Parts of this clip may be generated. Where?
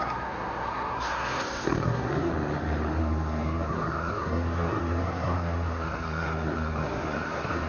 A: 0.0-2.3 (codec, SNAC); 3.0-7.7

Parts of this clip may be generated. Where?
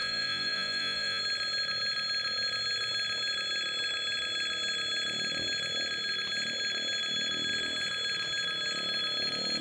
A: 0.0-1.2 (vocoder, Vocos)